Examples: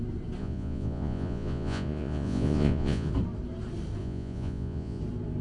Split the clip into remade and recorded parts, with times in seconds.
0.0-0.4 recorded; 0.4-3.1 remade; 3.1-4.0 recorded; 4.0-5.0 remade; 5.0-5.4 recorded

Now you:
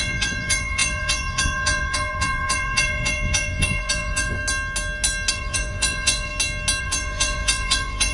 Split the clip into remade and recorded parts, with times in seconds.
0.0-4.4 remade; 4.4-5.3 recorded; 5.3-6.3 remade; 6.3-6.8 recorded; 6.8-8.1 remade

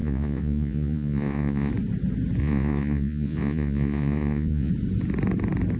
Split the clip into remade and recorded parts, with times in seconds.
0.0-1.7 remade; 1.7-2.4 recorded; 2.4-4.7 remade; 4.7-5.8 recorded